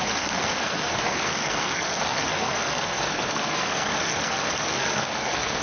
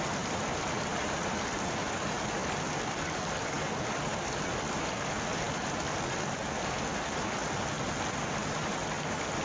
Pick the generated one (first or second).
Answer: first